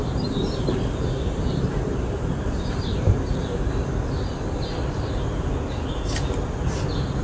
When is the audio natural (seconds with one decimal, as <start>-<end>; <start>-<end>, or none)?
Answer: 3.7-7.2

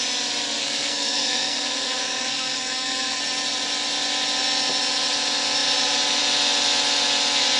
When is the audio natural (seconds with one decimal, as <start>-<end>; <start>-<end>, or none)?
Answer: 0.0-0.6; 3.2-7.6

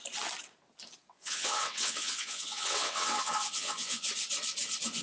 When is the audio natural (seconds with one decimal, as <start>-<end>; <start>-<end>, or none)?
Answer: 0.0-1.1; 4.1-5.0

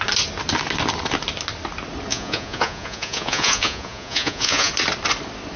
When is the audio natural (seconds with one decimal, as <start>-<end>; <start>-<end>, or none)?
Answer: 0.0-2.1; 4.7-5.6

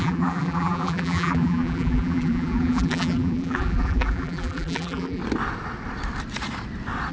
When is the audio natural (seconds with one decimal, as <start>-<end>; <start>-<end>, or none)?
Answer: 5.2-7.1